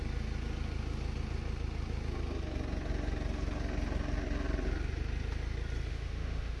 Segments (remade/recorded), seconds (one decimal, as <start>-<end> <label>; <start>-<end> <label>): 0.0-5.9 recorded; 5.9-6.6 remade